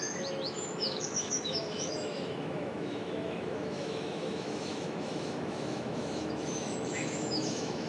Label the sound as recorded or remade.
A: remade